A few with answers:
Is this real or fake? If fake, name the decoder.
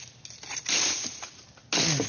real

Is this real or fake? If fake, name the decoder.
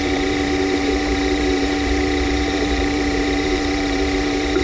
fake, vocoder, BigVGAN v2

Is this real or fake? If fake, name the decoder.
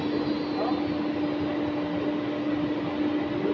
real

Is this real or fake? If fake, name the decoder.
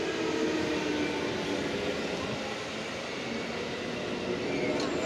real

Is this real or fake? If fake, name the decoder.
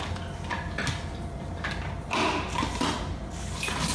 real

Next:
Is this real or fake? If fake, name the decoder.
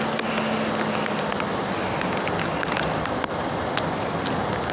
real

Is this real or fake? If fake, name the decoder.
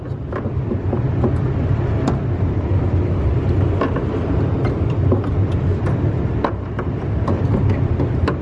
fake, vocoder, BigVGAN v2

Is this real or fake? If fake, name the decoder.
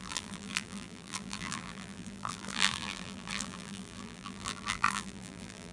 fake, vocoder, BigVGAN v2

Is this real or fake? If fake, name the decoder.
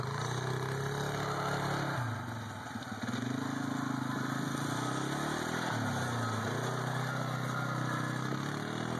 real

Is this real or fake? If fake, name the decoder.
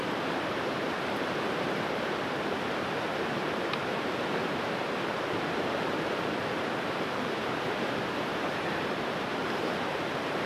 fake, vocoder, BigVGAN v2